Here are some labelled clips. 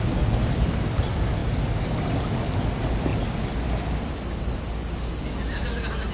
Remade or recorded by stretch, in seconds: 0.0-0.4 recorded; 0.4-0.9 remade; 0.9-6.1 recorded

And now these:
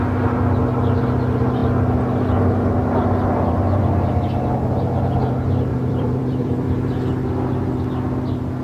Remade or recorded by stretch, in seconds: 0.0-5.7 recorded; 5.7-7.1 remade; 7.1-8.6 recorded

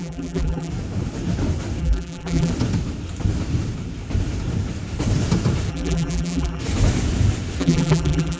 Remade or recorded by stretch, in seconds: 0.0-0.7 remade; 0.7-1.8 recorded; 1.8-2.5 remade; 2.5-5.7 recorded; 5.7-6.6 remade; 6.6-7.6 recorded; 7.6-8.4 remade